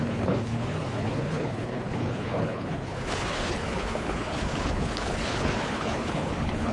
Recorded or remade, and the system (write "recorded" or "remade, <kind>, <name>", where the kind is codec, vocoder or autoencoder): remade, codec, HILCodec